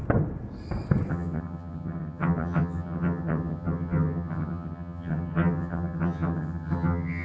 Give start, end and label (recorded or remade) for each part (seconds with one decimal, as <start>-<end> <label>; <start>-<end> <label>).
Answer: 0.0-1.1 recorded; 1.1-7.2 remade